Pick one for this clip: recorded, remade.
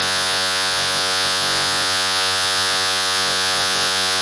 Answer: remade